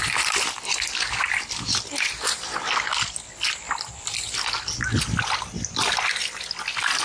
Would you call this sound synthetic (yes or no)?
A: no